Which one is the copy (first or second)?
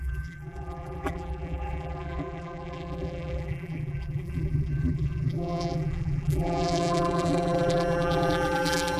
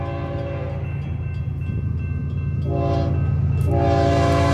first